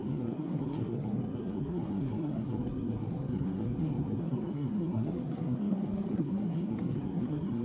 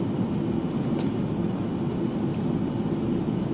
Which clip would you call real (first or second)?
second